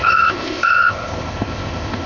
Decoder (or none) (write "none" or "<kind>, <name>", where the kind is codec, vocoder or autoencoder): codec, ZipCodec